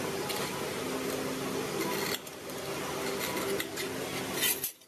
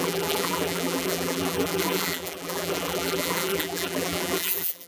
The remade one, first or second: second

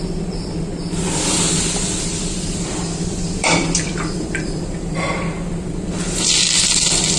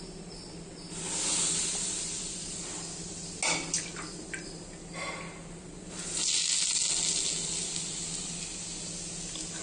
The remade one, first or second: first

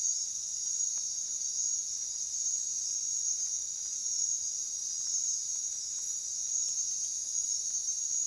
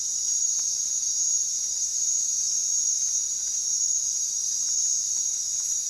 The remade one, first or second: second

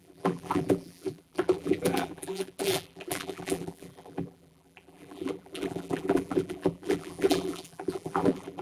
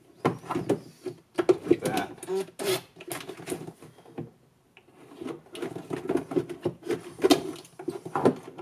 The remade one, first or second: first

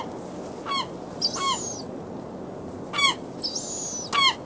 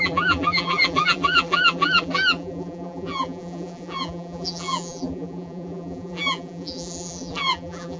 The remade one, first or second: second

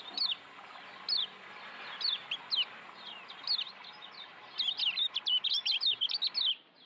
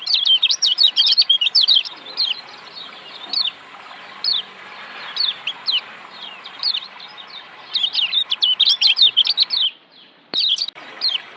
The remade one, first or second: second